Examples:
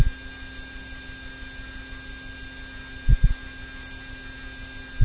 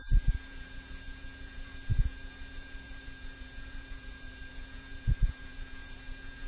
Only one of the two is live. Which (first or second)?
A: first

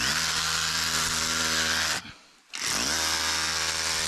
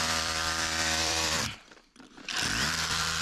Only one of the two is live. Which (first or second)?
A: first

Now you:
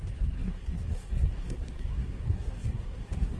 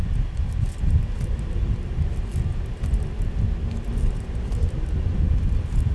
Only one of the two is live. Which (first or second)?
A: second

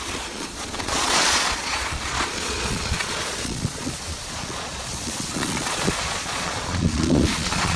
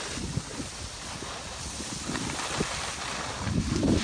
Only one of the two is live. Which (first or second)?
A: second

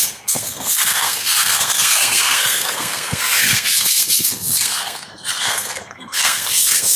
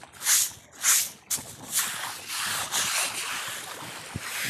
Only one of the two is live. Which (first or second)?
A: second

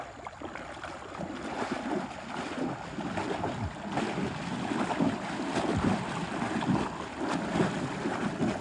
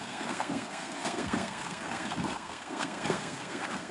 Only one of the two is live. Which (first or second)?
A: first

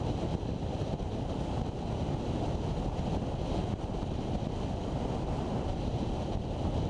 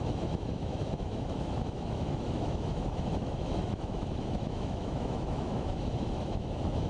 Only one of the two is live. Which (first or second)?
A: first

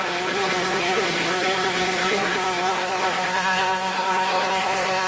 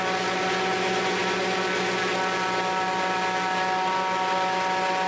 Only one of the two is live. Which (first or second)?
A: second